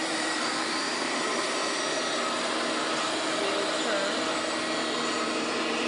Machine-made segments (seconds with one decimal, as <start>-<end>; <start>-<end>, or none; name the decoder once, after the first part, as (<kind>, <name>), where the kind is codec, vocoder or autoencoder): 0.0-1.6 (vocoder, BigVGAN v2); 5.1-5.9